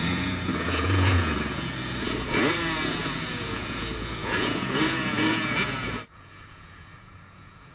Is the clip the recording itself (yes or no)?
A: no